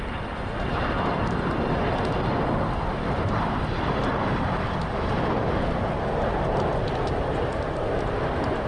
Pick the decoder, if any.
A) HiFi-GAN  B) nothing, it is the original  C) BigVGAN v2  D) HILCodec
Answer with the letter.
C